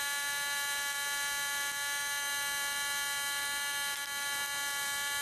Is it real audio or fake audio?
real